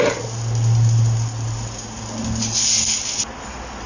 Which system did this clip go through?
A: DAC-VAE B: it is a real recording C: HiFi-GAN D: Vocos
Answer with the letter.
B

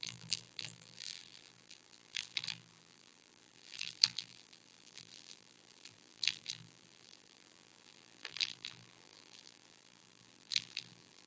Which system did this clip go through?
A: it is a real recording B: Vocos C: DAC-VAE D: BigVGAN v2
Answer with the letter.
D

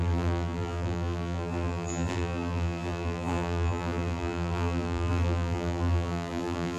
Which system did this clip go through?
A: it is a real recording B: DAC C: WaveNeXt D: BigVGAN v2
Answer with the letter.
D